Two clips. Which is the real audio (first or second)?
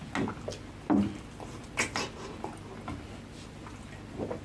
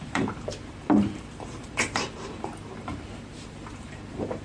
first